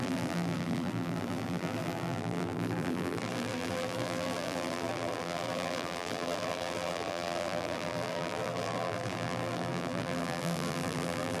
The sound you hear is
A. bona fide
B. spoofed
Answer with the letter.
B